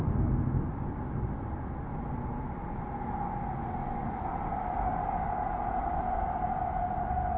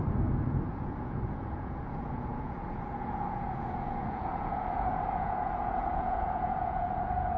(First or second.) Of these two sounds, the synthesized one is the second